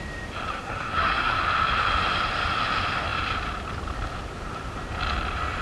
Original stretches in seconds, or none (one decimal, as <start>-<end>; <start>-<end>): 0.0-0.5; 1.4-5.6